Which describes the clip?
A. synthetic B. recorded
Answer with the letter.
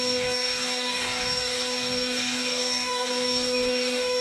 A